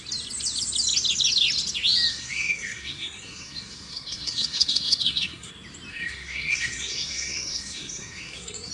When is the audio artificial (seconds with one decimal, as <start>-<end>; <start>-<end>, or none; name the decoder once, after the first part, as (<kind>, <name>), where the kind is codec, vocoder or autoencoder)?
2.1-5.5 (codec, SNAC); 5.9-8.7